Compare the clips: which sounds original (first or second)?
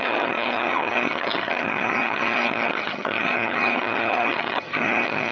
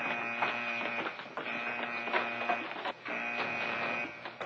second